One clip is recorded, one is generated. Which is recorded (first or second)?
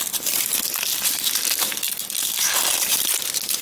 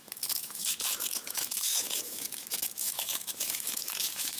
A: first